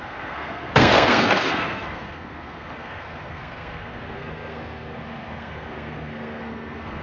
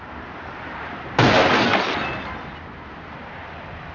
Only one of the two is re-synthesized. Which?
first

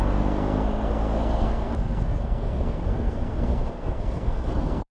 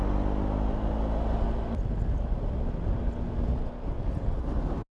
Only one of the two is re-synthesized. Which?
first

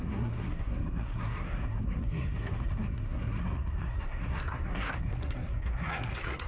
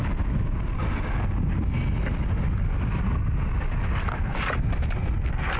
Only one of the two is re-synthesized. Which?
first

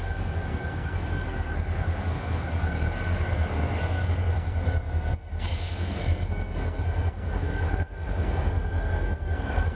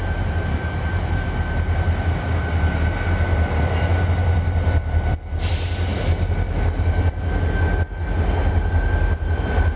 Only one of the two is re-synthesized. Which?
first